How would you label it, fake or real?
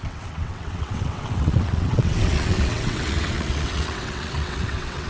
fake